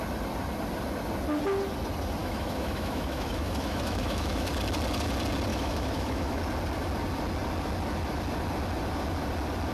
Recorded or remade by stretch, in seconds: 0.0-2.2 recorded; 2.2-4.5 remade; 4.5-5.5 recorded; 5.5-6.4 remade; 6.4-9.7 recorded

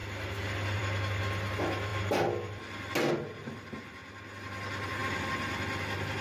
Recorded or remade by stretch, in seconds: 0.0-6.2 recorded

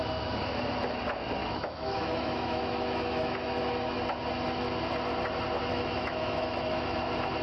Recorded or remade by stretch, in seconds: 0.0-1.4 recorded; 1.4-4.0 remade; 4.0-5.7 recorded; 5.7-7.0 remade; 7.0-7.4 recorded

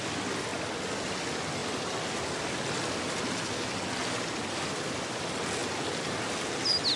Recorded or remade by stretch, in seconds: 0.0-7.0 recorded

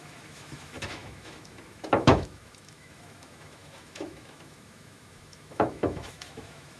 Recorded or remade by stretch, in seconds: 0.0-6.8 remade

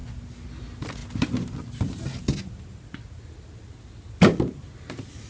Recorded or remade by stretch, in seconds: 0.0-5.3 recorded

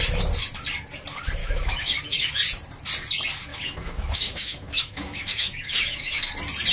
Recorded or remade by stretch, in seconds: 0.0-1.4 recorded; 1.4-2.3 remade; 2.3-3.5 recorded; 3.5-6.3 remade; 6.3-6.7 recorded

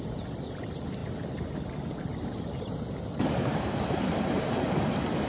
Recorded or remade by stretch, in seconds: 0.0-5.3 recorded